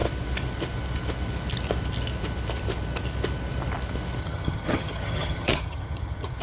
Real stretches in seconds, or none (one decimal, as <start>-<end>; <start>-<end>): 0.0-4.2